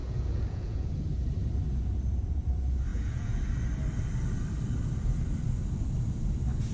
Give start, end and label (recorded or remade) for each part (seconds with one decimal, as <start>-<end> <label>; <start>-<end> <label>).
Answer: 0.0-1.0 remade; 1.0-2.9 recorded; 2.9-3.4 remade; 3.4-6.7 recorded